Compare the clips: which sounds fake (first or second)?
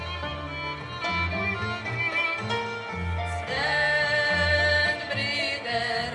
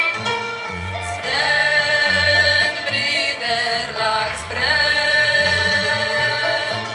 second